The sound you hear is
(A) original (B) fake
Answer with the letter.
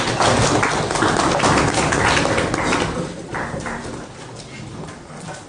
A